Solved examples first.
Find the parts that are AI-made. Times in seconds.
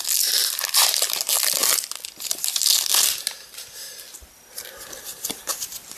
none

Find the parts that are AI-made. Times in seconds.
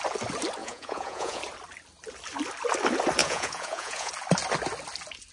0.6-1.4 (vocoder, Vocos); 3.2-4.1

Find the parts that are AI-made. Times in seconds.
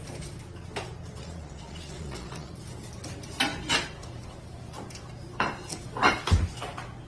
1.2-2.5 (vocoder, Vocos)